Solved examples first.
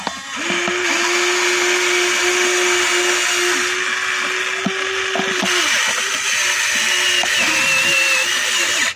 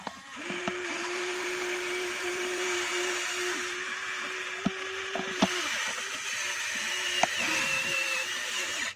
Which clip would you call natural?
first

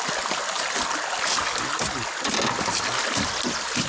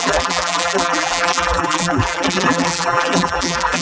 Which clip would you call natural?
first